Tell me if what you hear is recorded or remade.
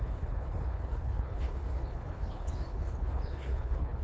remade